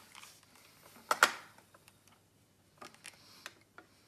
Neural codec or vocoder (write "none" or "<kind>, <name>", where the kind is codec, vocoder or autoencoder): none